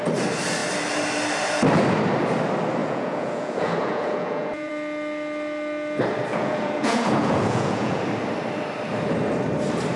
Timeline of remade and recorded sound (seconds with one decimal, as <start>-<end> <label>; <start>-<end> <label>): 0.0-2.8 recorded; 2.8-4.7 remade; 4.7-6.3 recorded; 6.3-8.0 remade; 8.0-10.0 recorded